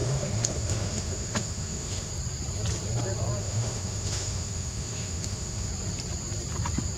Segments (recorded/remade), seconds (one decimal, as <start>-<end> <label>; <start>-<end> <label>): 0.0-2.1 remade; 2.1-3.4 recorded; 3.4-5.7 remade; 5.7-7.0 recorded